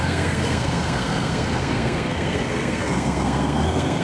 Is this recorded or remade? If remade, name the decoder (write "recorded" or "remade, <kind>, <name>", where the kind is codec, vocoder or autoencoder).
remade, codec, SNAC